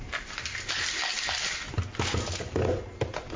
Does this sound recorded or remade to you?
recorded